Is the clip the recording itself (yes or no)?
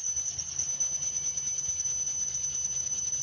yes